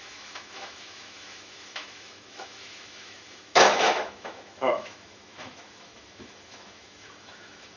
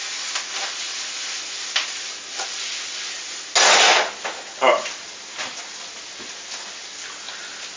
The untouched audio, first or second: second